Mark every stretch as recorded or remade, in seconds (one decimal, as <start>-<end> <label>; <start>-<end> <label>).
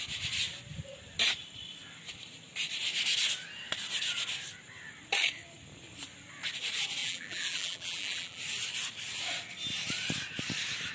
0.0-7.0 recorded; 7.0-8.4 remade; 8.4-10.9 recorded